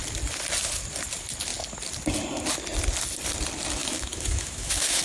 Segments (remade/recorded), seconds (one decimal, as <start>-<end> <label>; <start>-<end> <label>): 0.0-3.8 recorded; 3.8-5.0 remade